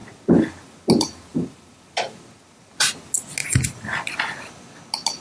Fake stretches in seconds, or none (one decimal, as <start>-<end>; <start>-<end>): 3.4-4.0